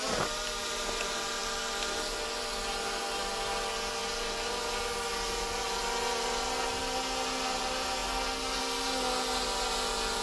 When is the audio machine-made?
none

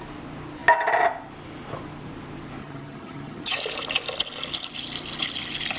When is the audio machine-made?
2.6-3.6 (vocoder, HiFi-GAN)